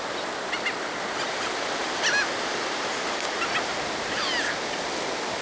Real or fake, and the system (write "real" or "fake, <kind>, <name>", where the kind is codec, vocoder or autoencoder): real